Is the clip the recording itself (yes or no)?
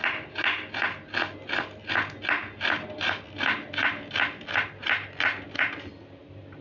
yes